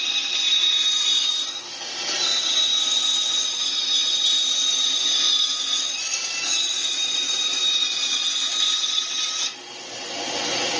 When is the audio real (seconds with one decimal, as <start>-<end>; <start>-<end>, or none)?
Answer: 0.0-10.8